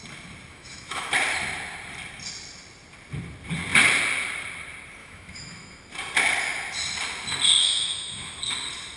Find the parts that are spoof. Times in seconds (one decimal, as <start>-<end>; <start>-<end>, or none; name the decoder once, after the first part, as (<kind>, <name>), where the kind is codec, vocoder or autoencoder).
0.5-1.1 (autoencoder, DAC-VAE); 5.0-5.8; 7.6-8.4